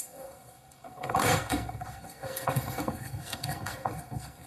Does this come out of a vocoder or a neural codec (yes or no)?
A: yes